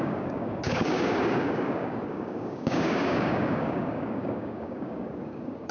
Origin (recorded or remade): remade